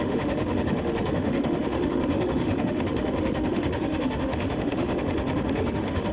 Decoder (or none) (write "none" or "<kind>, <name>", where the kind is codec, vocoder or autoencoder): autoencoder, DAC-VAE